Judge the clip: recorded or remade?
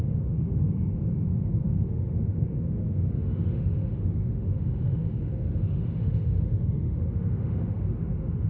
remade